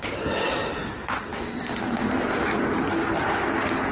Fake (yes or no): no